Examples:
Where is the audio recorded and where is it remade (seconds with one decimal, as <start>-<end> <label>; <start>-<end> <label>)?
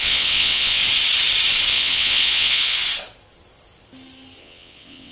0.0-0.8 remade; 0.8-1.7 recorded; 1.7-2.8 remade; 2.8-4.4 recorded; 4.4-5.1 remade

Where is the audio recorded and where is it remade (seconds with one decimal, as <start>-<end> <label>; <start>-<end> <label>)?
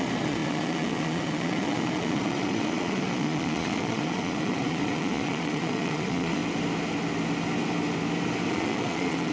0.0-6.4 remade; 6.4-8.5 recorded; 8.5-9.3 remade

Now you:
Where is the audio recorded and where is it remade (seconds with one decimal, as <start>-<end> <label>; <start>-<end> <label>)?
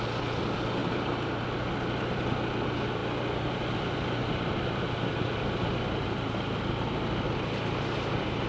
0.0-0.8 recorded; 0.8-1.4 remade; 1.4-4.2 recorded; 4.2-4.8 remade; 4.8-8.5 recorded